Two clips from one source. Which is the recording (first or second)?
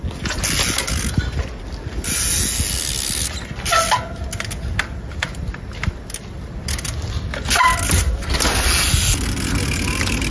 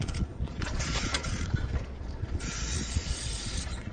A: first